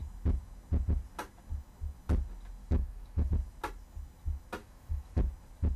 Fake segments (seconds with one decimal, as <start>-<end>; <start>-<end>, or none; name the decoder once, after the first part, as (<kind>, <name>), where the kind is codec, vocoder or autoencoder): 2.6-3.3 (autoencoder, DAC-VAE); 4.6-5.2

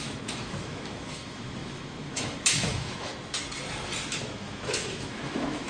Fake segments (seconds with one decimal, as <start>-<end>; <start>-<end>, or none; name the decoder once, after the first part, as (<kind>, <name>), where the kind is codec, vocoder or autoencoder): 0.0-3.1 (autoencoder, DAC-VAE); 4.2-5.7

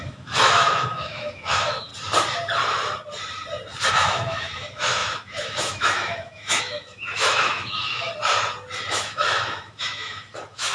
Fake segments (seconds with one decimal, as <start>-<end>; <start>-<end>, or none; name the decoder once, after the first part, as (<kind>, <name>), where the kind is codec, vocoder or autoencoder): 0.0-1.9 (autoencoder, DAC-VAE); 3.9-8.1; 8.9-10.7